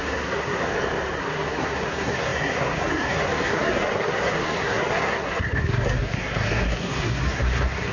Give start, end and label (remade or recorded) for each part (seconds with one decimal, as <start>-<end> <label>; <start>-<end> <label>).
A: 0.0-0.7 remade; 0.7-1.2 recorded; 1.2-7.9 remade